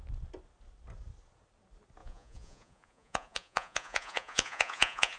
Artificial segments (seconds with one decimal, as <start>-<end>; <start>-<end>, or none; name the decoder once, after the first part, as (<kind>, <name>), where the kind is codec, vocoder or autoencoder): 2.0-5.2 (vocoder, Vocos)